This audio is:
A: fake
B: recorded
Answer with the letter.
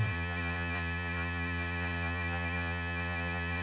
A